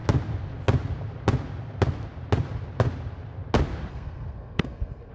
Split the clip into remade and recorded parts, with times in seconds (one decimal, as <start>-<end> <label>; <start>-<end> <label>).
0.0-3.9 recorded; 3.9-5.1 remade